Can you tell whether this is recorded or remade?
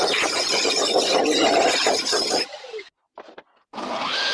remade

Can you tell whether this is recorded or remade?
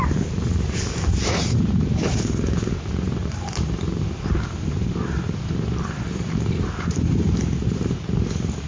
remade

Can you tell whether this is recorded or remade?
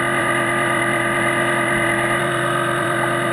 remade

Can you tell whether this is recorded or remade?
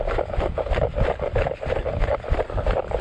recorded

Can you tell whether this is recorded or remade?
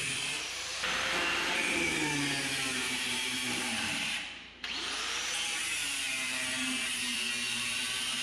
remade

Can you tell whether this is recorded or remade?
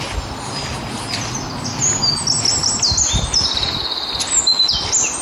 recorded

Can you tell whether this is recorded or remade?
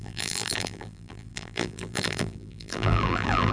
remade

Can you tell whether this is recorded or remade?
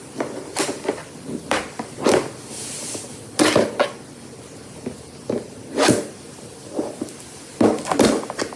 remade